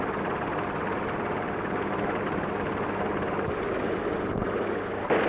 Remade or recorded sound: recorded